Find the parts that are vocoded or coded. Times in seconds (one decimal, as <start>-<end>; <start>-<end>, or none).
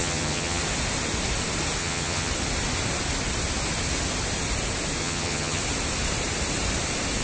0.0-0.6; 1.8-2.3; 5.0-5.6